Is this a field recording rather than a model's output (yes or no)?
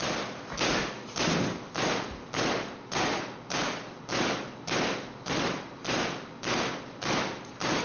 yes